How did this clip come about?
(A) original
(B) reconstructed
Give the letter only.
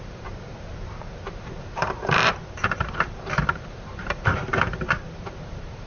B